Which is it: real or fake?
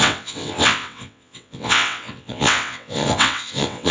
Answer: fake